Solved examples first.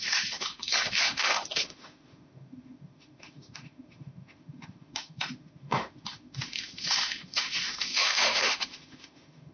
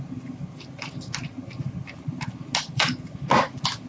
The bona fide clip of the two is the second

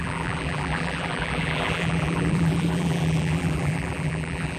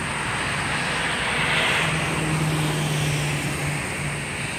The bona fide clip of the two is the second